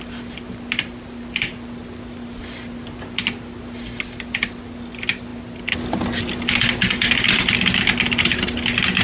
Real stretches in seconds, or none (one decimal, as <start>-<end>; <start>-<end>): 0.0-9.0